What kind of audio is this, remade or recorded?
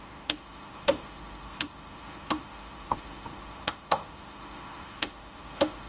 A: remade